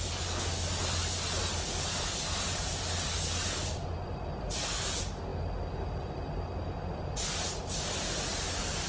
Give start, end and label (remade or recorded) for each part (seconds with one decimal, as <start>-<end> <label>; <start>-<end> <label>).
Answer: 0.0-8.9 recorded